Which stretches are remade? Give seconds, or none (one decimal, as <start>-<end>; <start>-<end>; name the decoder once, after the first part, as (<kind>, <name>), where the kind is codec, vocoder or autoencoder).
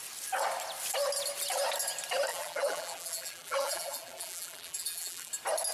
2.3-5.3 (vocoder, BigVGAN v2)